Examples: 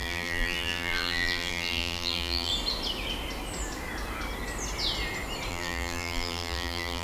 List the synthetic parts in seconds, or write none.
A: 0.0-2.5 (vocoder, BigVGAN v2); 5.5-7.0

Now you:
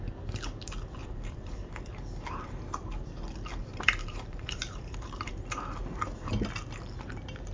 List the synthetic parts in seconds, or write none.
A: 1.0-1.7 (vocoder, BigVGAN v2); 3.6-5.3

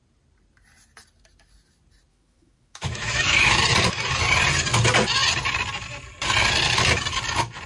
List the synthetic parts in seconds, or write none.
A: 2.1-3.6 (autoencoder, DAC-VAE)

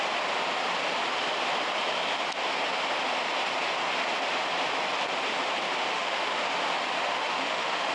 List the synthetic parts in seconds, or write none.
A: 5.9-6.5 (autoencoder, DAC-VAE); 7.1-7.9

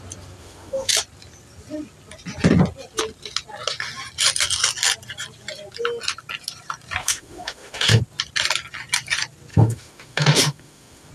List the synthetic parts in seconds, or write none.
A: 0.4-0.9 (autoencoder, DAC-VAE); 7.0-8.0; 9.5-11.1

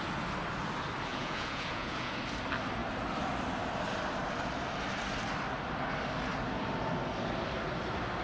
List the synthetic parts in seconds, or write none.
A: 1.1-2.2 (vocoder, Vocos)

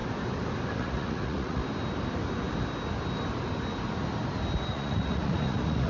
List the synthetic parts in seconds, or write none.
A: 0.8-1.6 (vocoder, Vocos); 4.7-5.9

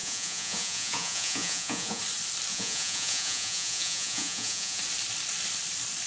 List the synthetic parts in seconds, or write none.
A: 0.0-2.0 (vocoder, Vocos); 2.5-4.8